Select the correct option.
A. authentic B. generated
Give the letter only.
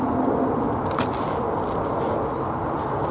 A